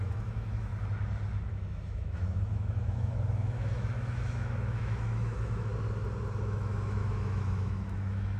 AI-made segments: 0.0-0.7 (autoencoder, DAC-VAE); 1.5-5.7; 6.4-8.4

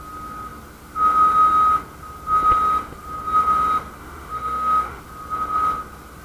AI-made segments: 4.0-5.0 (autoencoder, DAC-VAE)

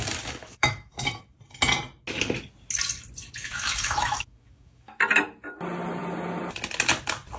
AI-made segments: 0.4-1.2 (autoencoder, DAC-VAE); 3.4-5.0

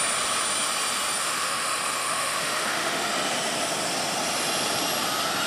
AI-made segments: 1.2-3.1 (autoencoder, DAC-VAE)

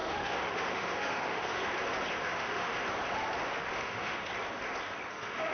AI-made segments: 0.0-1.6 (autoencoder, DAC-VAE); 2.2-2.7; 3.6-4.3; 5.1-5.5